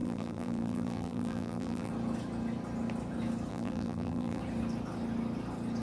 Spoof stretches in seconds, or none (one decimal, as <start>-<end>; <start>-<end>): 0.0-1.9; 3.5-4.4